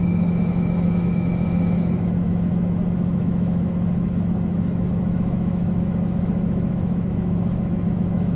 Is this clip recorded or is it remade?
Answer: remade